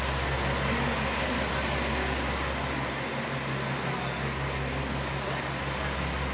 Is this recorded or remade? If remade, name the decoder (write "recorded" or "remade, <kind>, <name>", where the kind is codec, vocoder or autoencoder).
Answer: recorded